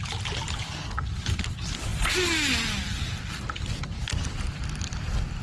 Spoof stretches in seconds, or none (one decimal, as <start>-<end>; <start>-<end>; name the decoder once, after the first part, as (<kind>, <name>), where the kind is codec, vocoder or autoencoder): none